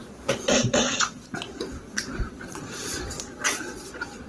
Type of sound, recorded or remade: remade